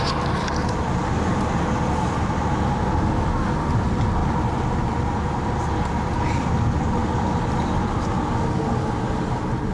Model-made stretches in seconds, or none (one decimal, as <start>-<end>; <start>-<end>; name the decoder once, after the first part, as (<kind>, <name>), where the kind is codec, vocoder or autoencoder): none